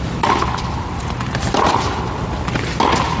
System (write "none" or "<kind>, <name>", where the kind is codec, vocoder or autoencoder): none